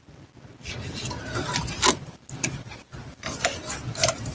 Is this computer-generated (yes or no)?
no